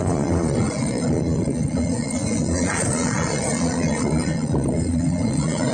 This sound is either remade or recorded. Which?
remade